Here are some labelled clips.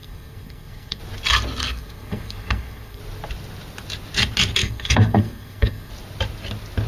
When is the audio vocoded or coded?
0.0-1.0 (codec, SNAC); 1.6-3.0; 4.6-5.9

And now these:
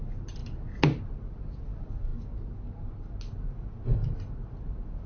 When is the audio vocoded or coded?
none

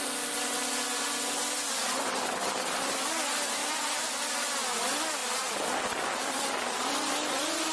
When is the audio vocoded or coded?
none

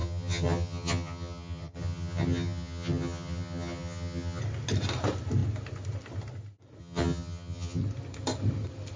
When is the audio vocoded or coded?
0.0-4.4 (vocoder, HiFi-GAN); 6.8-7.8

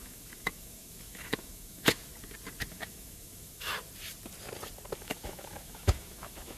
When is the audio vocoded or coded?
0.0-2.1 (autoencoder, DAC-VAE); 2.7-3.7; 5.0-6.6

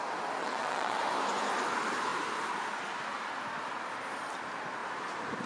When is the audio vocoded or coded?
0.4-1.0 (vocoder, WaveNeXt)

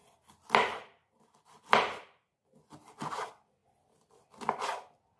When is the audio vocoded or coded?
none

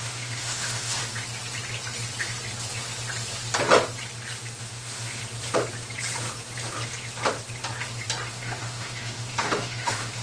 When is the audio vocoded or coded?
0.0-1.0 (autoencoder, DAC-VAE); 4.6-5.2; 8.3-10.2